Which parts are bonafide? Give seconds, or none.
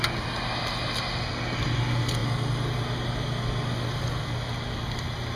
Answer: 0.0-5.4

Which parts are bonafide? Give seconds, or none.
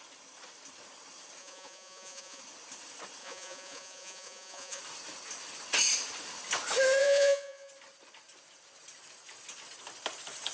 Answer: 0.0-1.4; 2.4-3.2; 4.8-7.0; 7.7-10.5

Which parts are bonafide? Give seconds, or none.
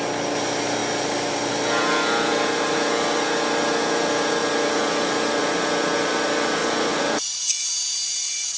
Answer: 0.0-6.6; 7.4-8.6